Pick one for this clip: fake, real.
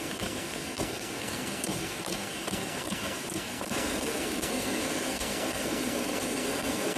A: fake